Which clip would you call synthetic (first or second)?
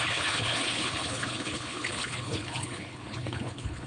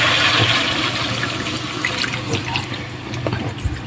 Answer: first